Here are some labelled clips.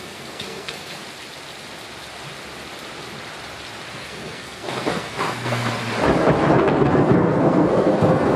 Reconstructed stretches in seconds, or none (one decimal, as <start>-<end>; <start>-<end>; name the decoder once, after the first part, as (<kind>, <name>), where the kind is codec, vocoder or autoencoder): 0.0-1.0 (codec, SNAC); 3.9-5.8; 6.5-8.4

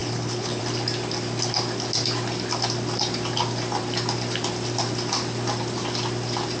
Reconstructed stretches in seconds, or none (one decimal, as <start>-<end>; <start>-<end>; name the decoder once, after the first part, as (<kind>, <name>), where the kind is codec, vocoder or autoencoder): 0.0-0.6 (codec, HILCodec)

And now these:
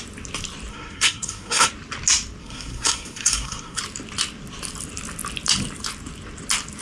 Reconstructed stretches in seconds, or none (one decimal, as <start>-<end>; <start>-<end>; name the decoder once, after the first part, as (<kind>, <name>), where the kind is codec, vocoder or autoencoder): 0.7-1.7 (codec, SNAC); 2.4-3.8